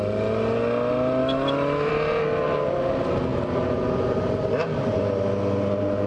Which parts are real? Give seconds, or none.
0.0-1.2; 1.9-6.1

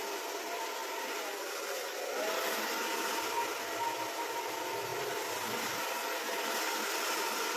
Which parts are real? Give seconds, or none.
0.0-7.6

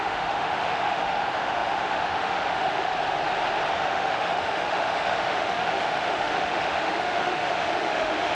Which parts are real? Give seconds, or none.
2.9-3.7

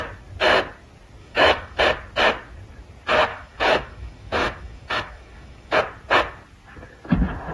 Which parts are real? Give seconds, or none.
0.0-1.2; 1.8-3.3; 5.8-7.5

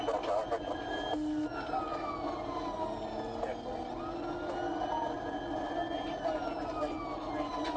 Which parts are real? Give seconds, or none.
0.0-7.8

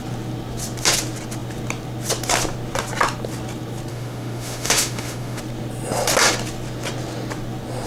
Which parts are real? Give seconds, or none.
0.0-3.9; 5.4-7.9

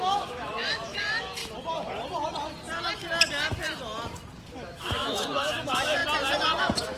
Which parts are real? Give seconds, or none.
1.4-4.5; 6.0-6.6